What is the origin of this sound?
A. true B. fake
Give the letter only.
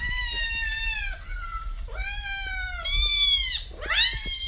A